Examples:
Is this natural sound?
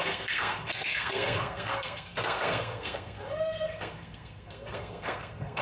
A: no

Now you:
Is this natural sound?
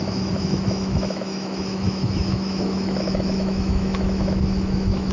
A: no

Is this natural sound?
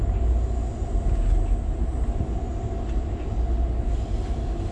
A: yes